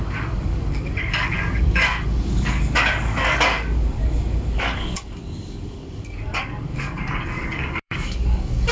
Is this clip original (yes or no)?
no